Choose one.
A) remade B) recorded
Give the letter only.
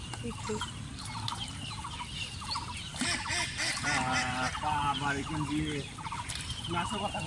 B